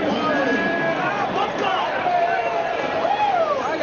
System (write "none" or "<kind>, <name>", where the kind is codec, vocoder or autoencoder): vocoder, BigVGAN v2